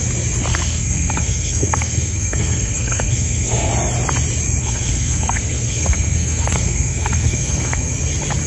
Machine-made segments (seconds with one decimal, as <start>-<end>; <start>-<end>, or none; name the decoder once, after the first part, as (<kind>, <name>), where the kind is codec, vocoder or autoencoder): 0.5-3.7 (codec, SNAC); 4.6-7.9